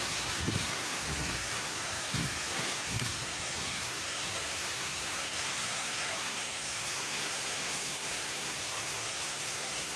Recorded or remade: remade